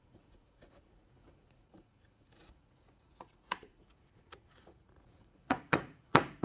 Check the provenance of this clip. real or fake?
fake